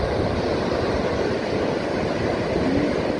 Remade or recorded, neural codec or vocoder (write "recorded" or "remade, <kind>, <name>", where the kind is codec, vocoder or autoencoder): recorded